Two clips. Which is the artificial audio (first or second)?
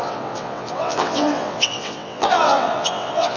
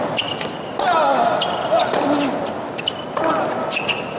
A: first